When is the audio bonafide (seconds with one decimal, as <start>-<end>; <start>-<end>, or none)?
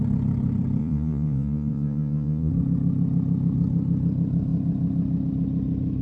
0.0-0.8; 2.5-6.0